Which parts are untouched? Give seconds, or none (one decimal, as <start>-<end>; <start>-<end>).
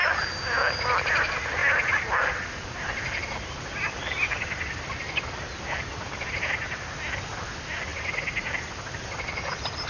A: 0.0-9.9